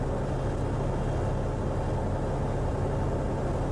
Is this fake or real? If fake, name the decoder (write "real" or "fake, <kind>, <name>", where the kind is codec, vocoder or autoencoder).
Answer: real